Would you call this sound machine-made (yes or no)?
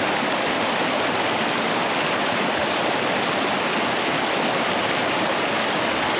no